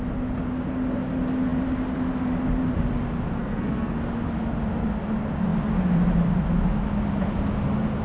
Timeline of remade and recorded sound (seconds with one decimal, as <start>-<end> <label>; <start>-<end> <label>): 0.0-3.4 recorded; 3.4-3.9 remade; 3.9-8.0 recorded